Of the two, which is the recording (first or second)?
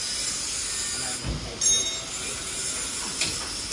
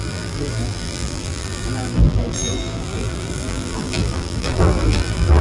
first